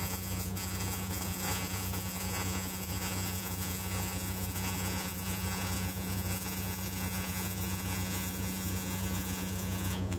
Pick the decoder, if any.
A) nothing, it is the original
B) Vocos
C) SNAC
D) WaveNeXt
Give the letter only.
B